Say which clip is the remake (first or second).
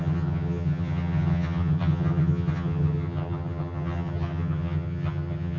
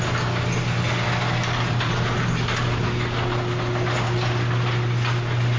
first